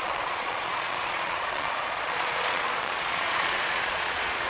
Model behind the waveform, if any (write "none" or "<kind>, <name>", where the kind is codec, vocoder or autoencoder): vocoder, Vocos